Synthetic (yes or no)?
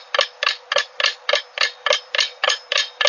no